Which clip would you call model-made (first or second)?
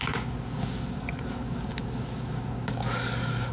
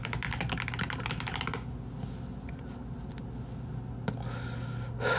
first